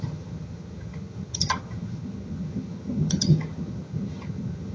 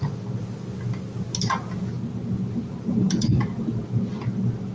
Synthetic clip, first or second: first